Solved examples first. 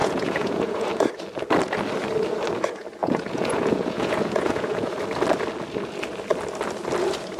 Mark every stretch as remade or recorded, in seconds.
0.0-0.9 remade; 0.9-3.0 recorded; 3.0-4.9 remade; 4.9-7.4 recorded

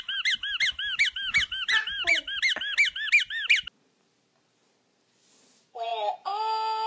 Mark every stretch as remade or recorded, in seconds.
0.0-6.9 recorded

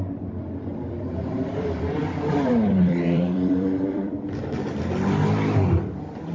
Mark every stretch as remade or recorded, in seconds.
0.0-0.7 recorded; 0.7-4.5 remade; 4.5-6.3 recorded

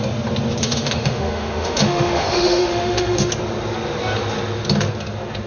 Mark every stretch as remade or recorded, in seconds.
0.0-0.6 recorded; 0.6-3.3 remade; 3.3-5.5 recorded